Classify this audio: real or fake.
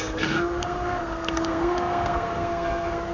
fake